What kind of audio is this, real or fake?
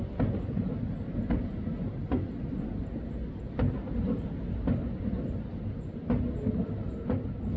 real